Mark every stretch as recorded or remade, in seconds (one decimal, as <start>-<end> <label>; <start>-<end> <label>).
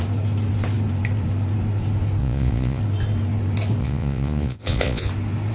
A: 0.0-2.2 recorded; 2.2-2.8 remade; 2.8-3.8 recorded; 3.8-5.1 remade; 5.1-5.5 recorded